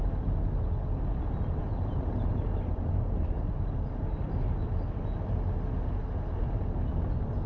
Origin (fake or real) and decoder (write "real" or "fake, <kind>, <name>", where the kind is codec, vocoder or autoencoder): real